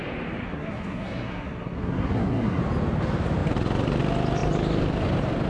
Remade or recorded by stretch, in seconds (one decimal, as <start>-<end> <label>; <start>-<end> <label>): 0.0-0.4 recorded; 0.4-2.6 remade; 2.6-5.5 recorded